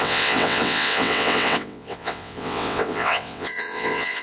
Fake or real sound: fake